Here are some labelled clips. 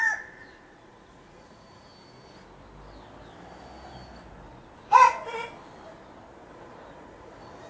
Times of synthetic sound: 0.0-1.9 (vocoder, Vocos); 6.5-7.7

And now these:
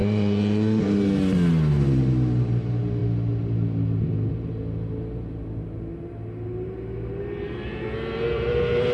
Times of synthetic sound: 0.0-0.8 (vocoder, Vocos)